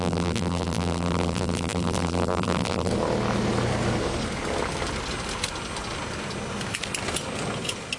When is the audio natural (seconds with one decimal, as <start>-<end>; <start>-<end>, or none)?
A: 2.9-8.0